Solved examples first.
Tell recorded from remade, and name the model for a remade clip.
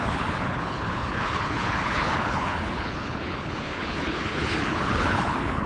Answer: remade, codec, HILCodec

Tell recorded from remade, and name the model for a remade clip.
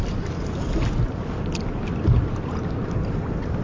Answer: recorded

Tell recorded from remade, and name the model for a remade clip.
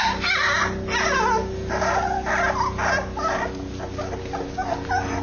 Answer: recorded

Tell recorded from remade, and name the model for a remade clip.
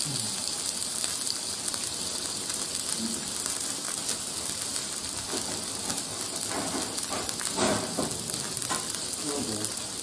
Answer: recorded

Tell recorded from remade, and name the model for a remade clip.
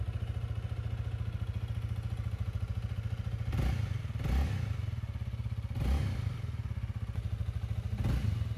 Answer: recorded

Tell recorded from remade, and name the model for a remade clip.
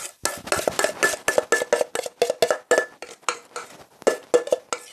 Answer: recorded